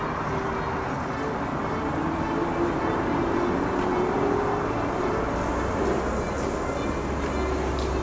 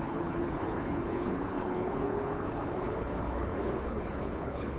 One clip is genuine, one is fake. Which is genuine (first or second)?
first